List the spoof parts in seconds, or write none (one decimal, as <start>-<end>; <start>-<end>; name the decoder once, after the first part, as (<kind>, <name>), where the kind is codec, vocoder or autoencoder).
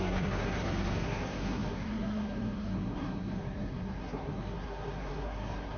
0.0-5.8 (codec, SNAC)